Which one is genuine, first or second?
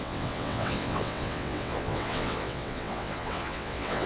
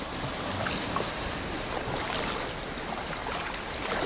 second